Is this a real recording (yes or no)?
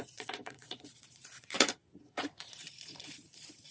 no